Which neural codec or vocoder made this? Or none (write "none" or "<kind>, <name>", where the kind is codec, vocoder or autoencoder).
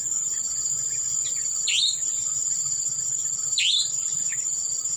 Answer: none